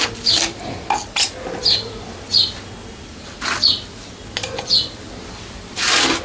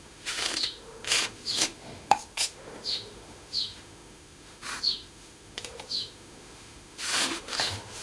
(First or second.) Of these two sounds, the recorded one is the first